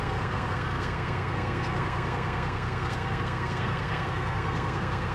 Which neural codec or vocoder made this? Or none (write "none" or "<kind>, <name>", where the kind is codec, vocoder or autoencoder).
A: codec, SNAC